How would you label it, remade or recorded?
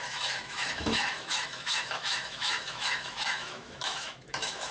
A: remade